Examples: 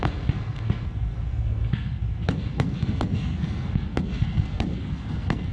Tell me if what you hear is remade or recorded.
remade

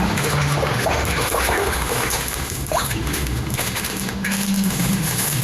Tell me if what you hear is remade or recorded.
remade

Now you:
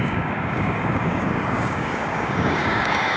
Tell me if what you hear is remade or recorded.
remade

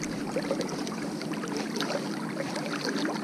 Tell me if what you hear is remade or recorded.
remade